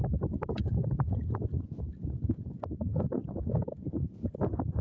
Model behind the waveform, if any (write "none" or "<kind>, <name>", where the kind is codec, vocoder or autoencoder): none